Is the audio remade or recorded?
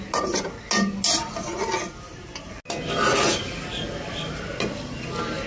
recorded